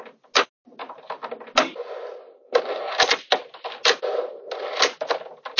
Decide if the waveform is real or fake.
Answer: real